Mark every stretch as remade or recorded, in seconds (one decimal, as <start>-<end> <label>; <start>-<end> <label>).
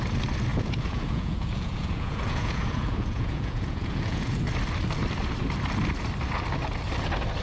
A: 0.0-0.5 recorded; 0.5-4.4 remade; 4.4-7.4 recorded